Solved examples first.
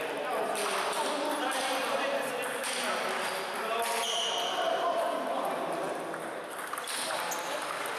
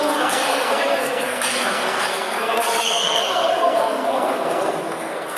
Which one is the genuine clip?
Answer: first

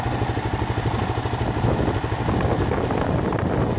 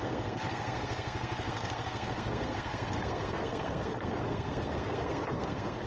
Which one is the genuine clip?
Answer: first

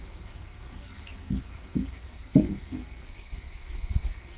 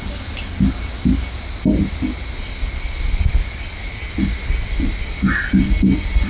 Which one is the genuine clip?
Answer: second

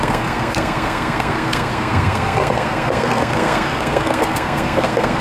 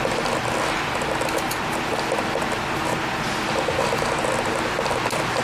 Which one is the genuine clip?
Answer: second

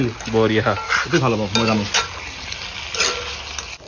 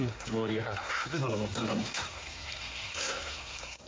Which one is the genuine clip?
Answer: first